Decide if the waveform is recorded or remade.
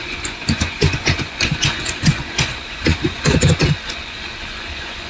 remade